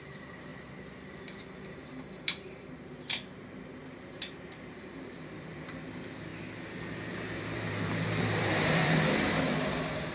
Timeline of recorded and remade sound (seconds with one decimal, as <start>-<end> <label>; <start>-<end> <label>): 0.0-0.5 remade; 0.5-1.4 recorded; 1.4-6.3 remade; 6.3-6.8 recorded; 6.8-10.1 remade